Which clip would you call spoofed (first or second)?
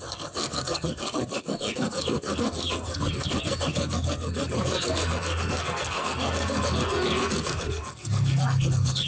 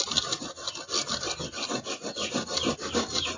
first